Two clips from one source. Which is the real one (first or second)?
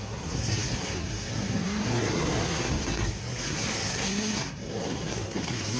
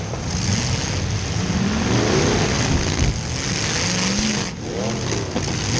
second